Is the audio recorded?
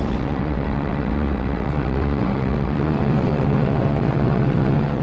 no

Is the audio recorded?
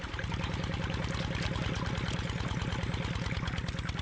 yes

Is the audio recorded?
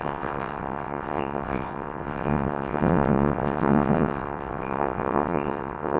no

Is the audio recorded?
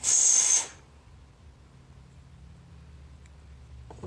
yes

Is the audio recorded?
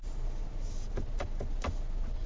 yes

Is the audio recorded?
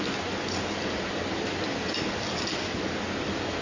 yes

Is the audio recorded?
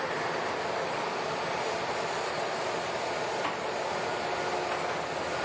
yes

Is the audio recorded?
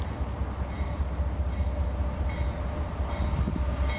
yes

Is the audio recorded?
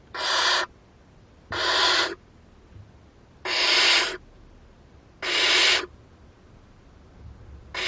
yes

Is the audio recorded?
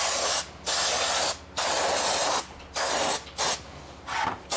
yes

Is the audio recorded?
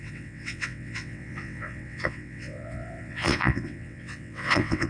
no